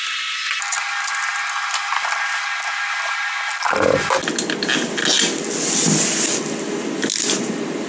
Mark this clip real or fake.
real